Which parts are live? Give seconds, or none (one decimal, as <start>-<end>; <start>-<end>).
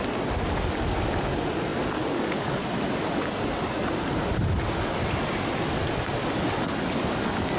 0.0-7.6